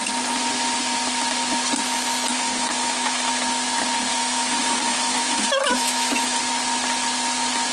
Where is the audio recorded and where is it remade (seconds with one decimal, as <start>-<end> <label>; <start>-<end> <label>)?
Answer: 0.0-2.3 recorded; 2.3-3.3 remade; 3.3-4.1 recorded; 4.1-6.4 remade; 6.4-7.7 recorded